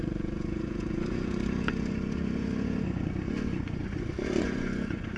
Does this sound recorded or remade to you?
remade